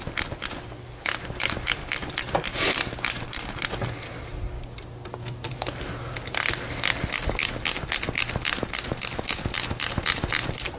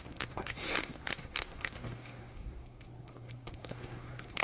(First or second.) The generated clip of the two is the second